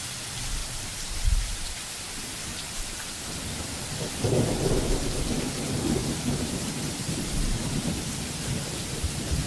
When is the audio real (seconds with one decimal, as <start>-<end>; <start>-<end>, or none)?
0.0-0.6; 1.9-2.5; 3.5-6.0